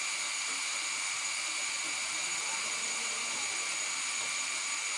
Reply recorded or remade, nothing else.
remade